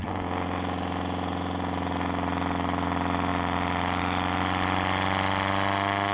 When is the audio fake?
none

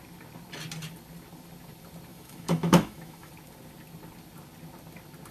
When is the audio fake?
2.1-3.3

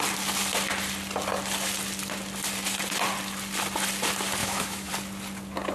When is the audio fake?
4.4-4.9

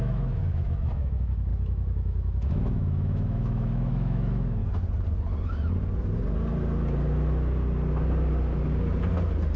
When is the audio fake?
0.0-4.6

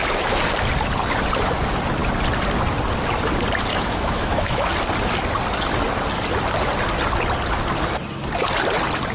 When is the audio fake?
3.7-4.7

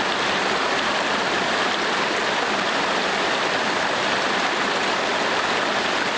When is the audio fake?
none